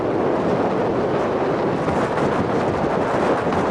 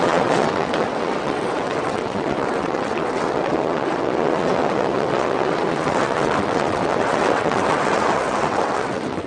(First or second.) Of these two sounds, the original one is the first